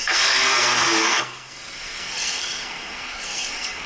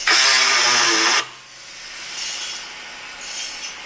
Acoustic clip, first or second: second